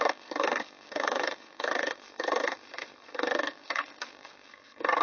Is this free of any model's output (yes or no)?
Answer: no